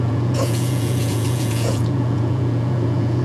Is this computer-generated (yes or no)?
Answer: yes